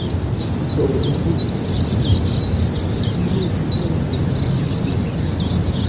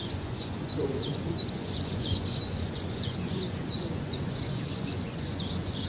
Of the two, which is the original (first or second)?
first